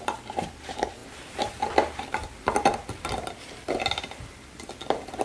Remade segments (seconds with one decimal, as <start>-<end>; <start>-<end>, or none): none